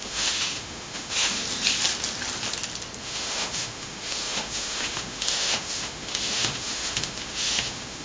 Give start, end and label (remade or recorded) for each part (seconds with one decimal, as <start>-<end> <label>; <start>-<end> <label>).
0.0-1.4 remade; 1.4-3.0 recorded; 3.0-8.0 remade

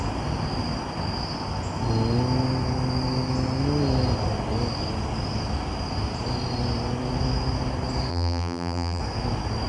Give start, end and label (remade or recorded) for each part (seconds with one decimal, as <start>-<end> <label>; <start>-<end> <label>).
0.0-8.1 recorded; 8.1-9.0 remade; 9.0-9.7 recorded

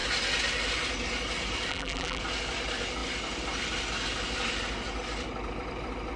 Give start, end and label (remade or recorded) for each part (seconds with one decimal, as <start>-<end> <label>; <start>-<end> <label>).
0.0-1.7 recorded; 1.7-2.2 remade; 2.2-6.2 recorded